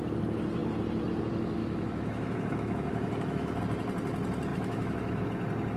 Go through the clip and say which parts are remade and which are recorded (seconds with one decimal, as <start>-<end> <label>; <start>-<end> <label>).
0.0-1.6 recorded; 1.6-3.6 remade; 3.6-4.5 recorded; 4.5-5.3 remade; 5.3-5.8 recorded